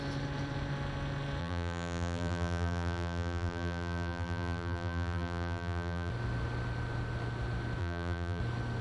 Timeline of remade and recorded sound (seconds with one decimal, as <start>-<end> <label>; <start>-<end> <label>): 0.0-1.4 recorded; 1.4-6.1 remade; 6.1-7.8 recorded; 7.8-8.4 remade; 8.4-8.8 recorded